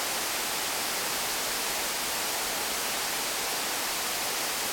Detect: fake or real real